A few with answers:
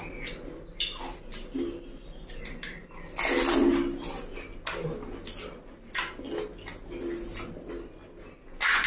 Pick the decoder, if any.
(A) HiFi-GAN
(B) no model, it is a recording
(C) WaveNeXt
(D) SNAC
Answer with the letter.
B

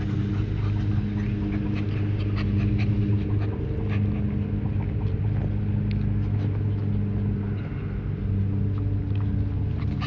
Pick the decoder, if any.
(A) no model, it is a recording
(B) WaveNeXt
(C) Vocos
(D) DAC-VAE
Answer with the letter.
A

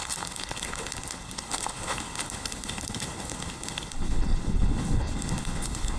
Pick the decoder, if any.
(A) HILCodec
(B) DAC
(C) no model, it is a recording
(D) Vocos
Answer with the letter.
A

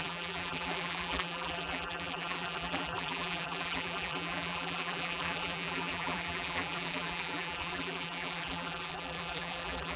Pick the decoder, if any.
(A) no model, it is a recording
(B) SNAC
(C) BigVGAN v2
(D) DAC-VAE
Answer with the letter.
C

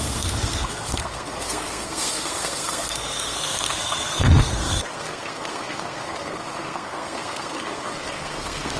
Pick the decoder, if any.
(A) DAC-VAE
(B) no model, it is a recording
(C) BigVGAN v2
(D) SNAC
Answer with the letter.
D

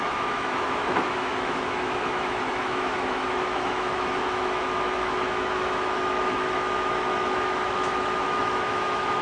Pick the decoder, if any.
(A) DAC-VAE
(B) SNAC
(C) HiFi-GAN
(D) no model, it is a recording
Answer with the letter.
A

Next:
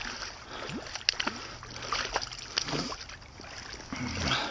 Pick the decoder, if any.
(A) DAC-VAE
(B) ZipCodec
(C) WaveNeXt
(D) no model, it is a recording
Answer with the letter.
D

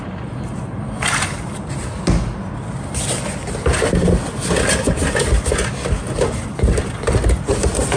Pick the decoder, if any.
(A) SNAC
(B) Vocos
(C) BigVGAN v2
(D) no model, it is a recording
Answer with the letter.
D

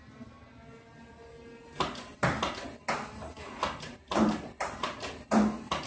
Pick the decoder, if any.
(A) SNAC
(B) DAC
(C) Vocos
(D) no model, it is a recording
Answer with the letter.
D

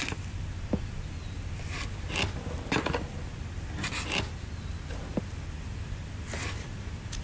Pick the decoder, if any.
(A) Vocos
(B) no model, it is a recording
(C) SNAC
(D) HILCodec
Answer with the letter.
B